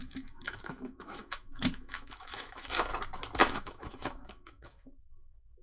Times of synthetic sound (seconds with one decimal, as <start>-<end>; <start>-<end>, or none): 0.0-2.9; 3.4-5.6